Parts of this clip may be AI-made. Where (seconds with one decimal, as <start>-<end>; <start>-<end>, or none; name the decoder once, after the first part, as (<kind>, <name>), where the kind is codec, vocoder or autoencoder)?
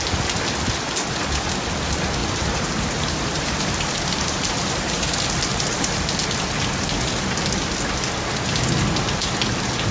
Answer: 2.2-5.1 (vocoder, BigVGAN v2); 5.5-6.0